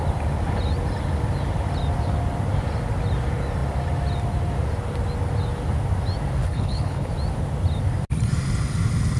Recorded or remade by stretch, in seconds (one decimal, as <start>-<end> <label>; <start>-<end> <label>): 0.0-6.4 recorded; 6.4-7.1 remade; 7.1-9.2 recorded